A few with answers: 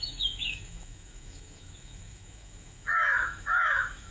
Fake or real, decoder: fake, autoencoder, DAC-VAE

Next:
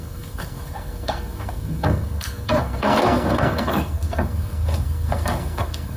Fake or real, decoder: fake, codec, SNAC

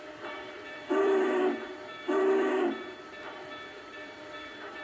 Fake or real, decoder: fake, vocoder, BigVGAN v2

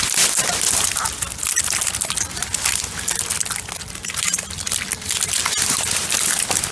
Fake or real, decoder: real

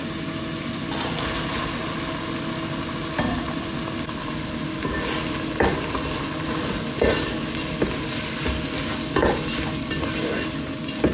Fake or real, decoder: real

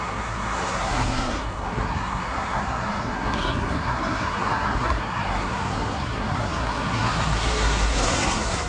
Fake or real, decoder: fake, codec, SNAC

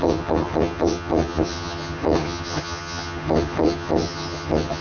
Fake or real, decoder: fake, vocoder, HiFi-GAN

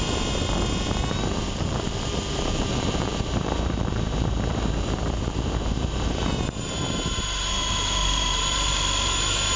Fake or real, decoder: fake, vocoder, BigVGAN v2